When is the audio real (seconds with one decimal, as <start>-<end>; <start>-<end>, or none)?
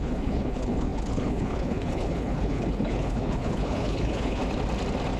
4.4-5.2